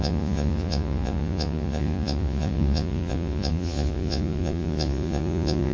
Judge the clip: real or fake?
fake